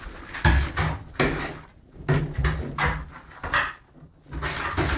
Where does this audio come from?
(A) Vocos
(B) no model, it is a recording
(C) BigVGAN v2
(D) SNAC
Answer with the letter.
B